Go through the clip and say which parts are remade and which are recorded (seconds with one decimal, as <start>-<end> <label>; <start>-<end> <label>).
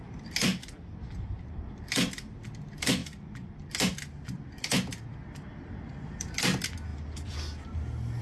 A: 0.0-8.2 recorded